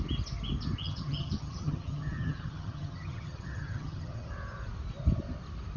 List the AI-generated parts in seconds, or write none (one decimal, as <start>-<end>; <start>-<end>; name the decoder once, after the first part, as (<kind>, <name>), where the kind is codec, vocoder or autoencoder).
0.8-4.3 (vocoder, HiFi-GAN)